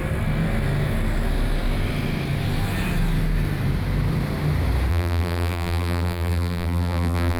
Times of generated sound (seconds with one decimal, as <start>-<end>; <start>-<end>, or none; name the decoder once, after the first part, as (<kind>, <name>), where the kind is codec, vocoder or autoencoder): 4.9-7.4 (vocoder, BigVGAN v2)

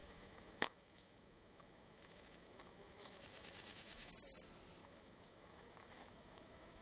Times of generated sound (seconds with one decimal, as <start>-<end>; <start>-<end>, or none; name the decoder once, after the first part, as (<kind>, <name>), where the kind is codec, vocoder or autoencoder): 0.0-4.1 (autoencoder, DAC-VAE); 4.8-6.8

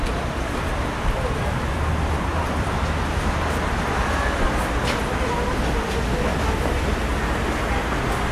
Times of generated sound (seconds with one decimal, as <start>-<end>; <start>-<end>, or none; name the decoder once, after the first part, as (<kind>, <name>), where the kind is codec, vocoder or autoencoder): 2.3-3.0 (vocoder, BigVGAN v2)

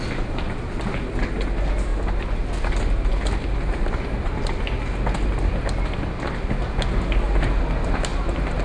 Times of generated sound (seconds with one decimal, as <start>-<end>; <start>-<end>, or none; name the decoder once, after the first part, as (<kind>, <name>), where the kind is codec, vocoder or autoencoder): none